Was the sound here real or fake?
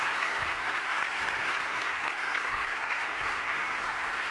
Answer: fake